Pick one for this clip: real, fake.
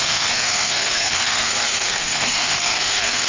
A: fake